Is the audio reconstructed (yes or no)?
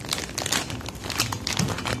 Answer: no